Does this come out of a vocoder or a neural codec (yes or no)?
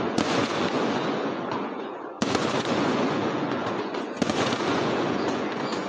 yes